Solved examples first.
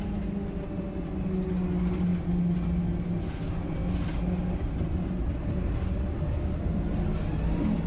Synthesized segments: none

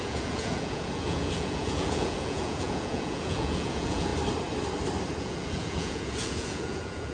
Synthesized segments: 0.0-4.1 (vocoder, Vocos); 5.2-7.1

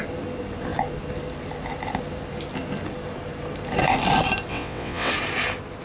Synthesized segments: 4.5-5.1 (vocoder, WaveNeXt)

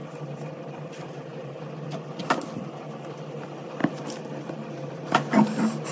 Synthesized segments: none

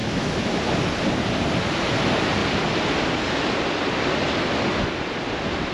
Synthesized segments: 0.0-0.6 (autoencoder, DAC-VAE)